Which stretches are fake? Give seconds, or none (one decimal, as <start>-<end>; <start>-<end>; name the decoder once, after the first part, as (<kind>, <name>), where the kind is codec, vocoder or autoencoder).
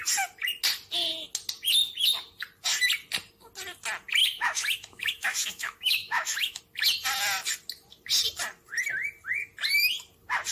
4.2-6.6 (autoencoder, DAC-VAE)